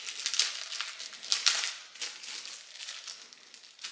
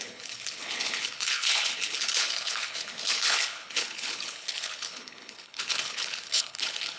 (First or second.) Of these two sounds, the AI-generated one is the second